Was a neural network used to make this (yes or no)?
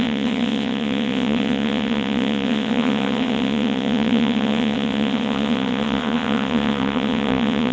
yes